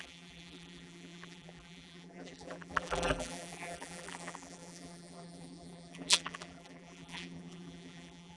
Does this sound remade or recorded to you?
remade